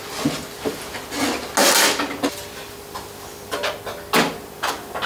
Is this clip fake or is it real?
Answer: real